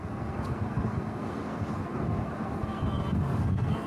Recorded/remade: remade